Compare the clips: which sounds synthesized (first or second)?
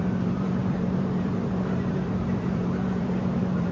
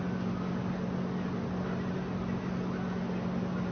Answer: first